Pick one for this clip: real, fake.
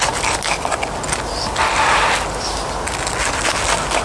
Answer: real